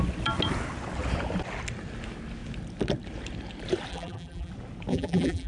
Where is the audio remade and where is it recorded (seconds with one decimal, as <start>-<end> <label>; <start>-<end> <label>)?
0.0-3.9 recorded; 3.9-4.5 remade; 4.5-4.9 recorded; 4.9-5.5 remade